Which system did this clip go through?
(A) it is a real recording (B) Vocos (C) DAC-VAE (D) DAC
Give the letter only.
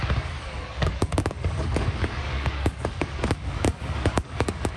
D